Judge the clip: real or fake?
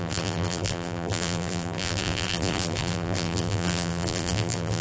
fake